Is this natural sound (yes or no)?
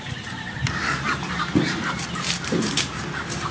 no